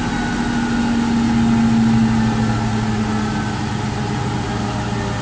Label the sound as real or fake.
real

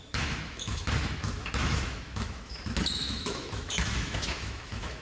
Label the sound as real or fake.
fake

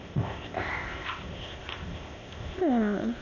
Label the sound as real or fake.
fake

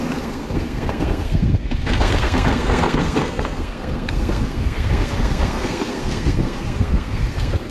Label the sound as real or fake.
fake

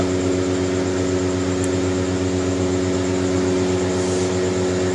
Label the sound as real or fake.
real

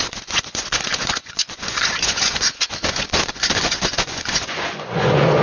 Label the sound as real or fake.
fake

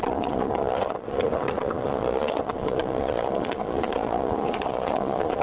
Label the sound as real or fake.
fake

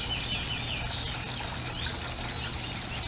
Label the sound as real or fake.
real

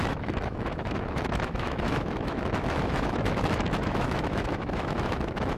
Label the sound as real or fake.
fake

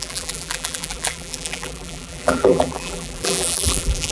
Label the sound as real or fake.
fake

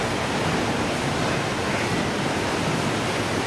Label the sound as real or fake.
real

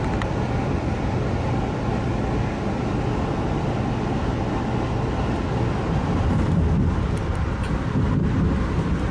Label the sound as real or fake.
real